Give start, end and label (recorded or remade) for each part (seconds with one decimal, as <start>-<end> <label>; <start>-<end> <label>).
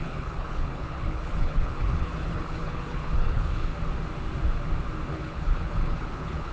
0.0-3.7 remade; 3.7-5.1 recorded; 5.1-6.5 remade